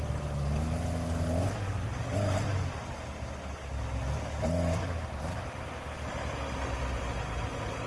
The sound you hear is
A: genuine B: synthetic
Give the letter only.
A